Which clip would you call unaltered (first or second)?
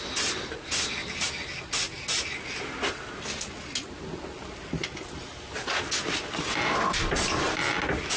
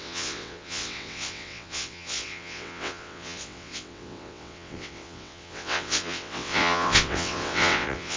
first